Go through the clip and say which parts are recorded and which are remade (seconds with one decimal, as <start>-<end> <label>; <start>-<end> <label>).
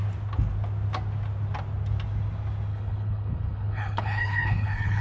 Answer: 0.0-2.7 recorded; 2.7-5.0 remade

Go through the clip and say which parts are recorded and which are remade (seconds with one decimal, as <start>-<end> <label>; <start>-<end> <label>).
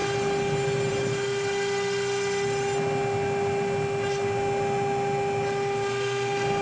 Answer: 0.0-6.6 recorded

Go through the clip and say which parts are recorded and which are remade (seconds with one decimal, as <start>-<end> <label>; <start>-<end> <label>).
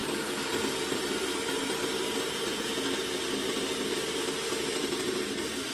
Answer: 0.0-5.7 recorded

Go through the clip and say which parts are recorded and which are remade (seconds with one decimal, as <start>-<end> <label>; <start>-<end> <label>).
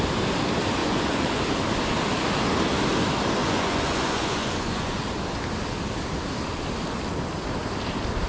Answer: 0.0-0.8 recorded; 0.8-1.4 remade; 1.4-3.4 recorded; 3.4-5.0 remade; 5.0-8.3 recorded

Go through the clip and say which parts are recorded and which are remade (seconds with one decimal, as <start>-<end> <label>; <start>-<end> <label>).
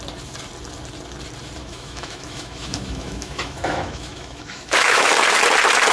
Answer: 0.0-1.6 recorded; 1.6-5.1 remade; 5.1-5.9 recorded